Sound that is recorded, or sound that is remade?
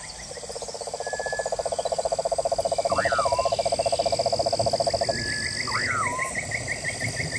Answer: recorded